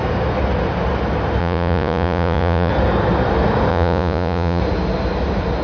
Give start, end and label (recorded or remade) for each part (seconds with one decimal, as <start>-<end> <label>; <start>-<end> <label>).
0.0-1.4 recorded; 1.4-2.7 remade; 2.7-3.7 recorded; 3.7-4.6 remade; 4.6-5.6 recorded